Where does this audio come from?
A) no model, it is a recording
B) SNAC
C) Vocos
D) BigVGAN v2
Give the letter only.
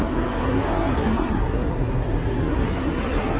B